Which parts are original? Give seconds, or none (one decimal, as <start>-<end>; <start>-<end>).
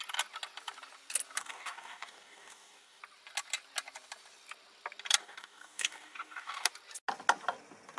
0.0-1.4; 3.0-5.2; 6.7-8.0